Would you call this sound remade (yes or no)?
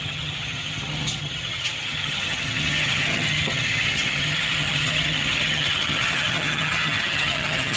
yes